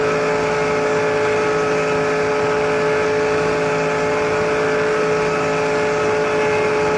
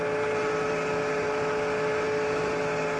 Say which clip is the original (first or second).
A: first